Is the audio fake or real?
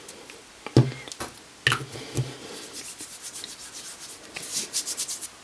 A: real